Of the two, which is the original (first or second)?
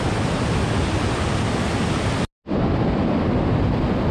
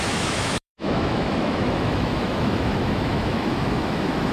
first